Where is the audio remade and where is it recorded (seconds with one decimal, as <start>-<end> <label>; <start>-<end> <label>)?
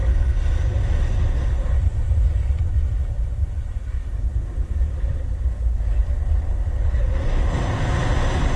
0.0-3.0 recorded; 3.0-3.5 remade; 3.5-8.6 recorded